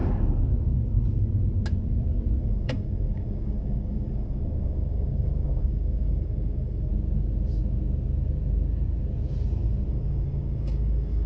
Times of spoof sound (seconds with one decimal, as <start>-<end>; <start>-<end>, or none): 2.4-6.9; 9.9-11.3